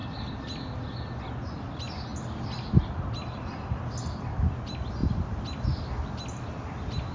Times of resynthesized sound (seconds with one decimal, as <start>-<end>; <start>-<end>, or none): none